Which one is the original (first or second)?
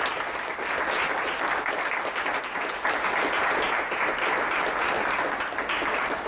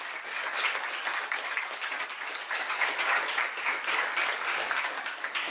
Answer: first